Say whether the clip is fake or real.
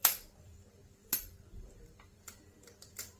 fake